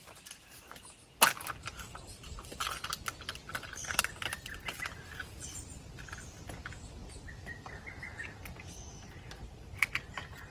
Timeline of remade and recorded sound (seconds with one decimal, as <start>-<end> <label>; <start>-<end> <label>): 0.0-5.5 recorded; 5.5-6.2 remade; 6.2-10.5 recorded